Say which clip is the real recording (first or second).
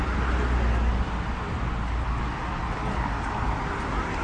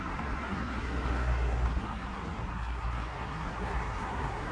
first